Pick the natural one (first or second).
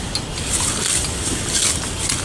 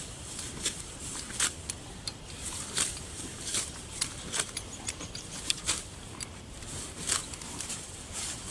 first